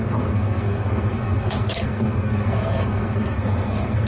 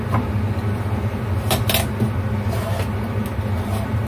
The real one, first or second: second